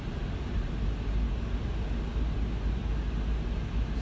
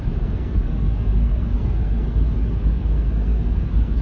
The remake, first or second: second